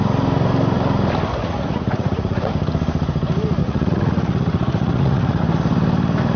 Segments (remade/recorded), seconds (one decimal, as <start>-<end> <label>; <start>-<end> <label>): 0.0-1.4 recorded; 1.4-2.5 remade; 2.5-3.6 recorded; 3.6-5.4 remade; 5.4-6.4 recorded